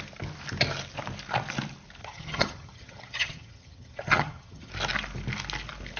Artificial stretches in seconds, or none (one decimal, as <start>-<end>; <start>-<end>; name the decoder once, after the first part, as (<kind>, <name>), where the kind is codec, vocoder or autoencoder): 2.0-4.7 (vocoder, HiFi-GAN)